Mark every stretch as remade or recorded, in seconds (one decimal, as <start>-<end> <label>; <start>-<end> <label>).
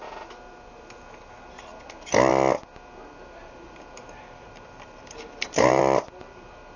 0.0-3.4 recorded; 3.4-5.8 remade; 5.8-6.8 recorded